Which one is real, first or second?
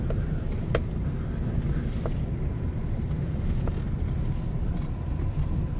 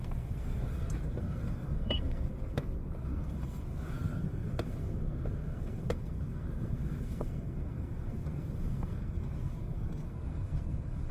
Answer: first